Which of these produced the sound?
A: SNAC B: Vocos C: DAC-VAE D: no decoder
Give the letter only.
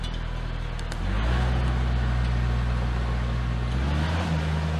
D